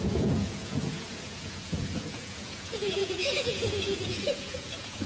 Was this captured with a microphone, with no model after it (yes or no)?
no